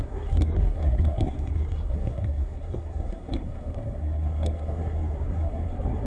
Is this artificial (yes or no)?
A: yes